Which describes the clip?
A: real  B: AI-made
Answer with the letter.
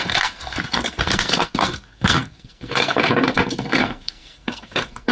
B